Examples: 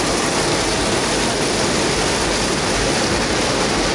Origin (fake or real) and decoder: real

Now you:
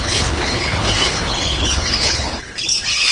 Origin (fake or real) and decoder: fake, codec, HILCodec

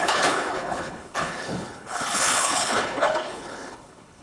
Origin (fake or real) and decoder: fake, codec, HILCodec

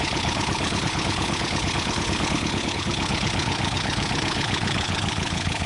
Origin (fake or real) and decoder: fake, codec, HILCodec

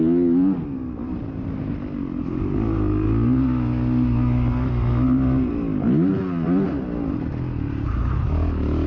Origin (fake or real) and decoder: real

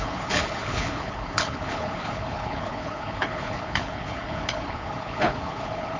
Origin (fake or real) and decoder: fake, codec, HILCodec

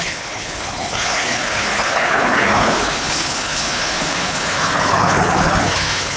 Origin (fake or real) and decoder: fake, codec, HILCodec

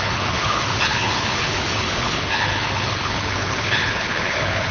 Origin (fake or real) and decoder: fake, codec, HILCodec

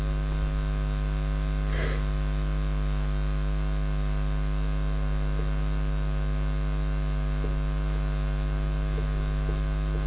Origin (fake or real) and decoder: real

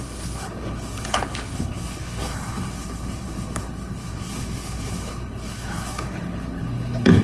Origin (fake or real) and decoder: fake, codec, HILCodec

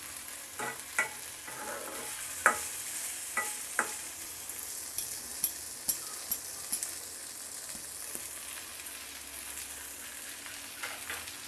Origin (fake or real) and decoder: real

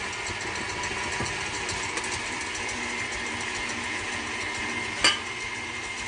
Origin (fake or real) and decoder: real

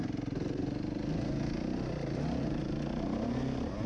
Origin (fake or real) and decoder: real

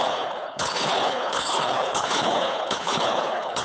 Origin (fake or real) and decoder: fake, codec, HILCodec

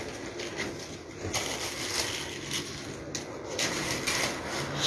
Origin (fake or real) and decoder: real